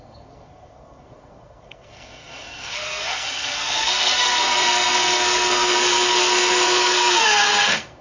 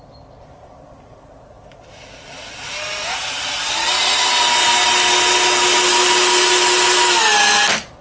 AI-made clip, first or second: first